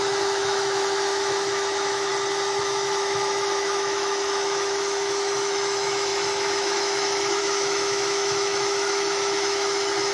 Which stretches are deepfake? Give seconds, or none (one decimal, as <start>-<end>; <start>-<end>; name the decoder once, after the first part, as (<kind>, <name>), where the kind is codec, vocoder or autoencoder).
0.0-2.1 (autoencoder, DAC-VAE); 2.6-10.1